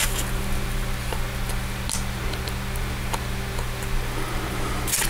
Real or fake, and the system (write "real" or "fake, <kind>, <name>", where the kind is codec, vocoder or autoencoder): real